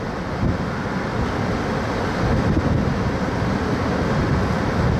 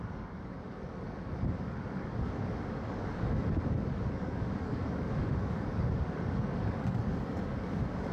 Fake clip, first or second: second